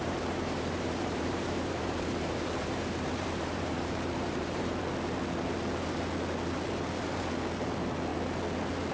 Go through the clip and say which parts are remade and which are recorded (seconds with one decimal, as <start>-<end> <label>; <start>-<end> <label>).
0.0-4.8 remade; 4.8-8.9 recorded